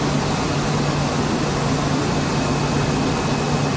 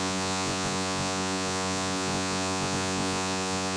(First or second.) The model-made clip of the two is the second